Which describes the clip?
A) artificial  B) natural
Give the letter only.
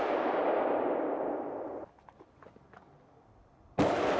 B